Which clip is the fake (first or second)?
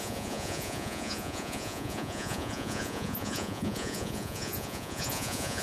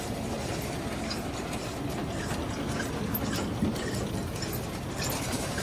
first